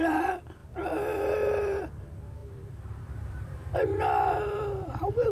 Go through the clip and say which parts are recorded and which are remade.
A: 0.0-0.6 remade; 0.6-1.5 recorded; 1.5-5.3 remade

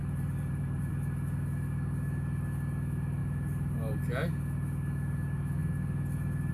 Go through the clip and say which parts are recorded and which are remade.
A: 0.0-0.9 remade; 0.9-3.2 recorded; 3.2-4.0 remade; 4.0-6.5 recorded

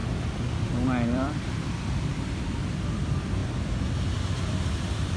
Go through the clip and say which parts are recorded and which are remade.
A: 0.0-0.7 recorded; 0.7-3.4 remade; 3.4-4.5 recorded; 4.5-5.2 remade